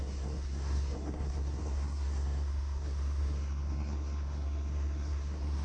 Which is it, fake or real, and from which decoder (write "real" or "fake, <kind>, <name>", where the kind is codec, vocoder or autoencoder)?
fake, codec, SNAC